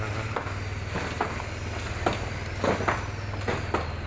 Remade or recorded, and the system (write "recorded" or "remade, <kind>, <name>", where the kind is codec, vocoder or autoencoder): recorded